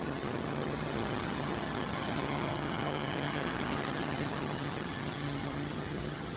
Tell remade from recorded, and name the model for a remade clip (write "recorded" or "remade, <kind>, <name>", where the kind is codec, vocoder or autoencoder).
remade, vocoder, HiFi-GAN